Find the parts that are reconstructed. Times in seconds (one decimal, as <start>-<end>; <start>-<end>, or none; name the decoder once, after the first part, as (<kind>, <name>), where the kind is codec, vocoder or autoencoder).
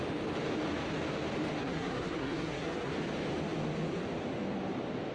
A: 1.6-2.9 (codec, SNAC)